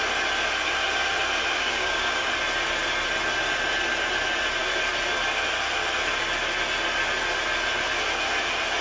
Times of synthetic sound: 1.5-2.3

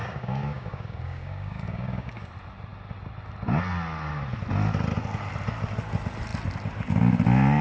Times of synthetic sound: 0.0-2.3

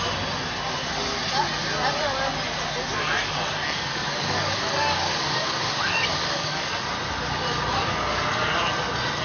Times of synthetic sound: 3.9-6.7

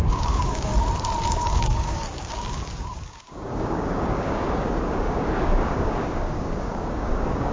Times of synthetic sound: 0.0-0.7; 1.3-7.5

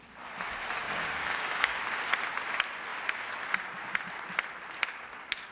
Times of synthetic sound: 0.8-1.8

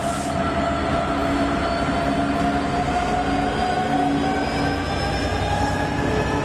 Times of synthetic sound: none

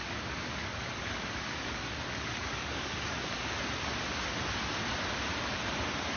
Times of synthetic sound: 0.0-3.6